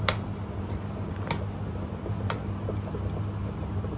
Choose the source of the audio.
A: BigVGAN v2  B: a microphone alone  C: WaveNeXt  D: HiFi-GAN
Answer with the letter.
B